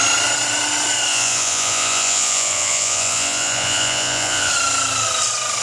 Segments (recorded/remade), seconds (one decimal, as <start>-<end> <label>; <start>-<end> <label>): 0.0-1.1 recorded; 1.1-4.5 remade; 4.5-5.6 recorded